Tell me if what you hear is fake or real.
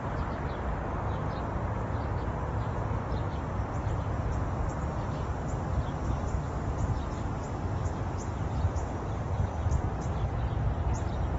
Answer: real